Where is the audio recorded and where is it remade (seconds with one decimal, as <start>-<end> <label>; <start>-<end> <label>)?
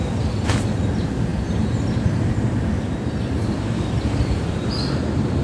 0.0-5.4 recorded